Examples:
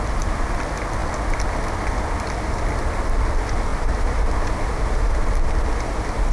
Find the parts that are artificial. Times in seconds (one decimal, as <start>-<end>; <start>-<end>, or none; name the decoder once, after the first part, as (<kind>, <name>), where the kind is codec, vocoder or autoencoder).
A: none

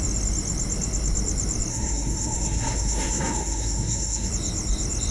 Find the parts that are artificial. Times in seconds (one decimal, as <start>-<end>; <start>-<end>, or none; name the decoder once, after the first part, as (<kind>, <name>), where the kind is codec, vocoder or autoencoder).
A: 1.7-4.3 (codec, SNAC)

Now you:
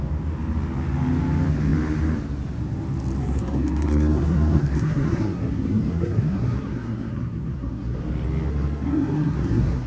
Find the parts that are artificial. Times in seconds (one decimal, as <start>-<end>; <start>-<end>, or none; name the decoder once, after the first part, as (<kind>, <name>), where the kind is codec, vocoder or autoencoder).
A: 3.2-8.0 (codec, SNAC); 8.5-9.9

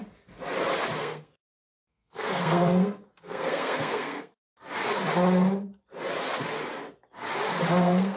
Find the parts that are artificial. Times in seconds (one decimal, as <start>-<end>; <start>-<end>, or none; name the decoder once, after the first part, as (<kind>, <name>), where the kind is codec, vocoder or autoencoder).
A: 1.0-4.5 (codec, SNAC); 7.7-8.2

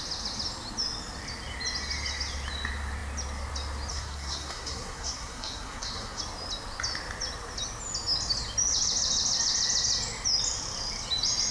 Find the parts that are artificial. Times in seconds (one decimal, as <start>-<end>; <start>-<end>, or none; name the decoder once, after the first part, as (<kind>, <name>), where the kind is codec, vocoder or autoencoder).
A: 3.9-6.2 (codec, SNAC)